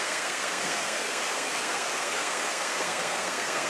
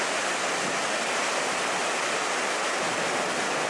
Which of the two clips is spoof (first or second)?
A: first